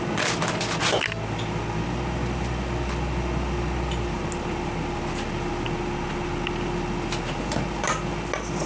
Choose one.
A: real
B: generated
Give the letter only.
A